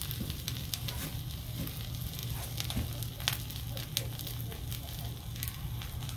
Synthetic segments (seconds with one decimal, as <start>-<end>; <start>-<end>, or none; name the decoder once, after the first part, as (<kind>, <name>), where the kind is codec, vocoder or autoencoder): none